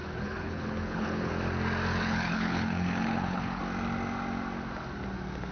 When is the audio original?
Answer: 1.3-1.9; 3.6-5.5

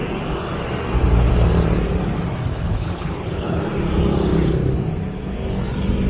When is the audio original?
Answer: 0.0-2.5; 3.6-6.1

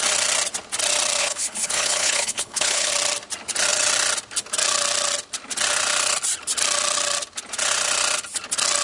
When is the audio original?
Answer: 0.0-1.2; 2.9-8.8

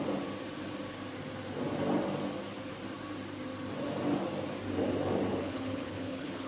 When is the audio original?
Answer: 0.0-5.3